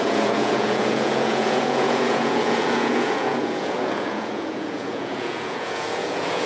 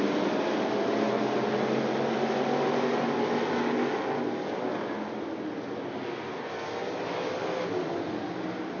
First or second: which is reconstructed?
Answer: first